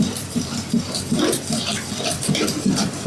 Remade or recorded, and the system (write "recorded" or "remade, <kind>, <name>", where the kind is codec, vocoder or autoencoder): remade, vocoder, BigVGAN v2